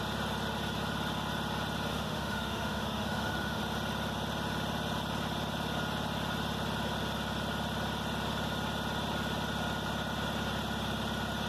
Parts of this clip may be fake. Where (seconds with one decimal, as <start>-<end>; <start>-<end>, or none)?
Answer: 1.9-3.6